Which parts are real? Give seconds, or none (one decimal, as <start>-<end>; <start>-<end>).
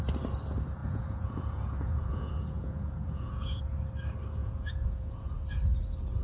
0.0-0.8; 3.6-4.4; 5.3-6.2